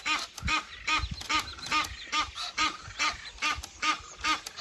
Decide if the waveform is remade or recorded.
recorded